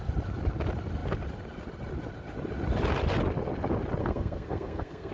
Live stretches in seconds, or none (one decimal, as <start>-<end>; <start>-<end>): 0.0-4.0